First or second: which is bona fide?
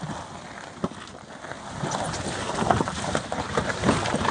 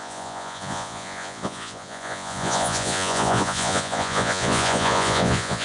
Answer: first